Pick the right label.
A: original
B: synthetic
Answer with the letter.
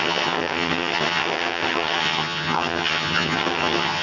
B